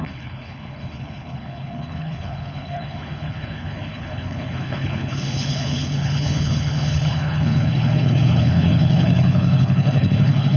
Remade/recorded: remade